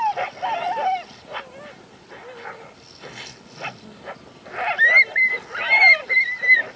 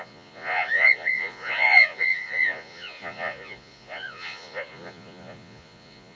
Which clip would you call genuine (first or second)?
first